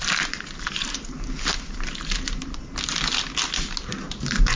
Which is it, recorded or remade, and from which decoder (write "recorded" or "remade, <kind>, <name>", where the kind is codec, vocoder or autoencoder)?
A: recorded